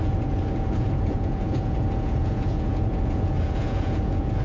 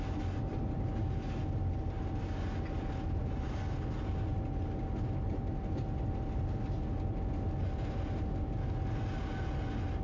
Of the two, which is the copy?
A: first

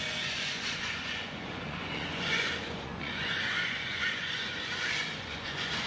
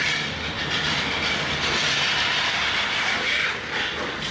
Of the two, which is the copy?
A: first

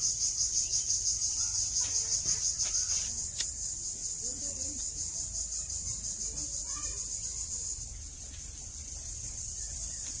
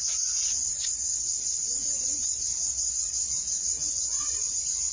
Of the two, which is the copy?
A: second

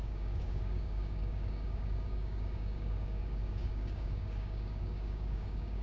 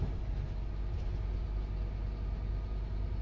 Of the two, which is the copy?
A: first